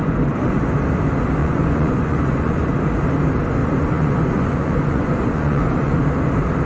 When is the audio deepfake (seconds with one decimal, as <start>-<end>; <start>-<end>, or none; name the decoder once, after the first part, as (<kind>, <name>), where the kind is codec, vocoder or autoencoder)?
0.0-0.6 (vocoder, Vocos); 1.4-2.6; 3.6-6.0

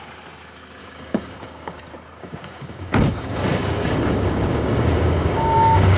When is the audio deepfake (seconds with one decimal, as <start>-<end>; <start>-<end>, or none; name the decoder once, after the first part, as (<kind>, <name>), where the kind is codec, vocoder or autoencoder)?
0.8-1.8 (codec, DAC); 2.2-6.0

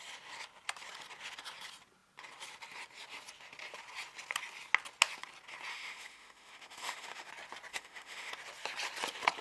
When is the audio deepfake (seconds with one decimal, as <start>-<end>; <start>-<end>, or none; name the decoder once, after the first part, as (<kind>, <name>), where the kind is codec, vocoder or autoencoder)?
5.7-7.3 (autoencoder, DAC-VAE); 7.7-8.3

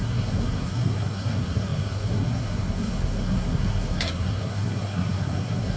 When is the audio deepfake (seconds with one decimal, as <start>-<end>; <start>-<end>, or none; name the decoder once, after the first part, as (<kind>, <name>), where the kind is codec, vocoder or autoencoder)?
0.0-5.8 (codec, SNAC)

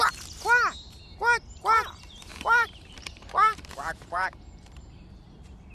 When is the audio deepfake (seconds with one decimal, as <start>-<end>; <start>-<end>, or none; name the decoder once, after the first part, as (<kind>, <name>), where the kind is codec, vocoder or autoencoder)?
2.3-5.1 (vocoder, BigVGAN v2)

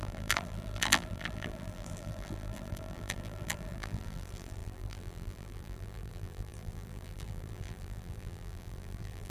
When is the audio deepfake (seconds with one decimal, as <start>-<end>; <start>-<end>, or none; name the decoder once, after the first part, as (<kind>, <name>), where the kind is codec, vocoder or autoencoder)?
0.0-9.3 (vocoder, BigVGAN v2)